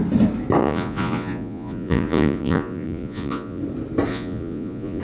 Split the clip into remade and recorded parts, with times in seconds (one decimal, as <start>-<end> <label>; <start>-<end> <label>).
0.0-0.6 recorded; 0.6-3.6 remade; 3.6-4.1 recorded; 4.1-5.0 remade